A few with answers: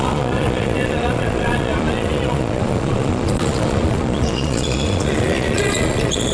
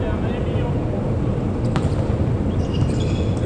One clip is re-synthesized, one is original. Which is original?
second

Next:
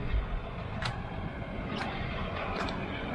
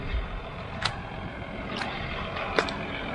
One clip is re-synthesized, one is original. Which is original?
second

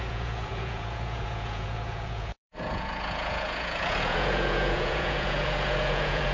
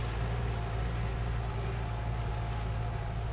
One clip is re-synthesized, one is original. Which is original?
second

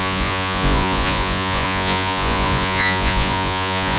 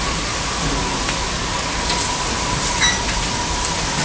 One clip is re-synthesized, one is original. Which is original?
second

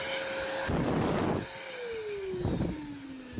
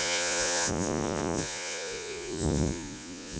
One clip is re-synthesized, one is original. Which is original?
first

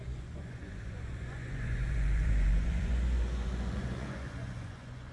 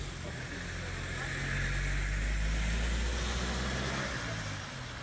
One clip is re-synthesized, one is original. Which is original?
second